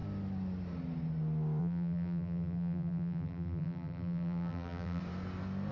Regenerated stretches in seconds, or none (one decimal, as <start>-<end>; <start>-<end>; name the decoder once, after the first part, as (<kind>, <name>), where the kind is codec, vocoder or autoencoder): 1.6-5.0 (vocoder, BigVGAN v2)